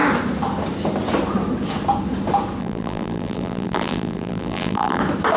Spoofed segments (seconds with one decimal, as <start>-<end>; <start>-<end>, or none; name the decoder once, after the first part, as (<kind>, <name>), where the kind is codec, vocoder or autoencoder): 2.6-5.0 (vocoder, BigVGAN v2)